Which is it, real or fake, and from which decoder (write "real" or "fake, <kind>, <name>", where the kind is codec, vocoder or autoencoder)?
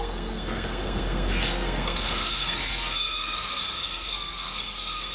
fake, codec, SNAC